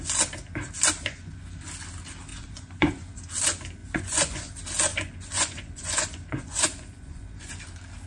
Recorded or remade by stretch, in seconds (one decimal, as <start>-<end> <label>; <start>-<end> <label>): 0.0-1.0 recorded; 1.0-1.6 remade; 1.6-2.3 recorded; 2.3-3.2 remade; 3.2-3.8 recorded; 3.8-4.5 remade; 4.5-4.9 recorded; 4.9-7.5 remade; 7.5-8.1 recorded